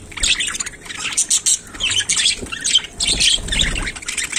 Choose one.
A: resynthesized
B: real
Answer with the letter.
B